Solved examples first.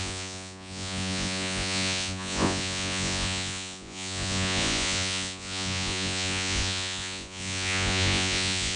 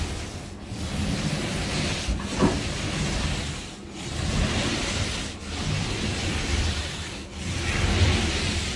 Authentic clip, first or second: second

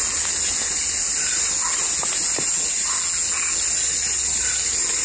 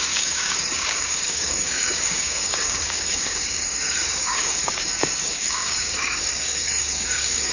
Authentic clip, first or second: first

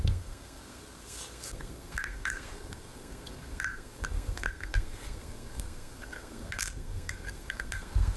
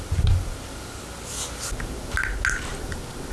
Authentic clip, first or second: second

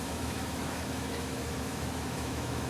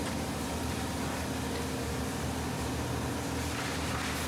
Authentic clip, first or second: second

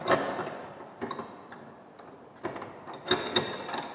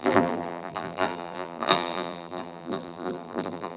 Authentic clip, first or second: first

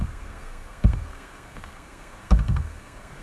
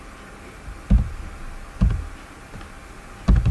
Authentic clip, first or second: second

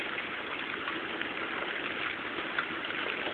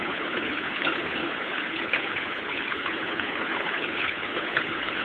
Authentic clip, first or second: first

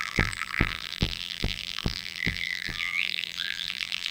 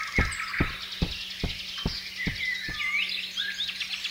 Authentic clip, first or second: second